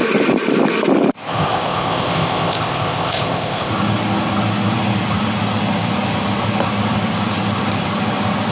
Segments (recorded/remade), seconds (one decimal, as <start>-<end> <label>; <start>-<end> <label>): 0.0-1.2 recorded; 1.2-3.7 remade; 3.7-8.5 recorded